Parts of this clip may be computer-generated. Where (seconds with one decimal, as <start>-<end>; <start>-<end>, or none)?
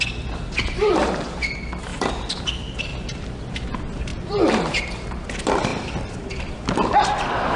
1.9-2.4; 2.9-3.4; 4.1-5.3; 5.7-6.5